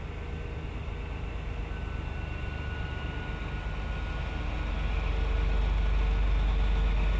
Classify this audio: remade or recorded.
recorded